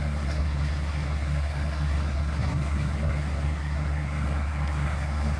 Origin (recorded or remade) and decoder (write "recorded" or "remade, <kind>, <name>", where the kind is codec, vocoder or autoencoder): remade, codec, SNAC